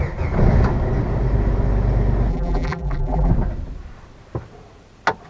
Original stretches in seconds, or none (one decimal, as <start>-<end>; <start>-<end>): 0.0-2.3; 3.3-5.3

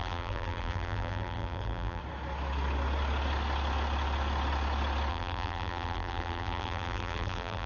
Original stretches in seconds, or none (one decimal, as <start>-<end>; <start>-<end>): 2.0-5.1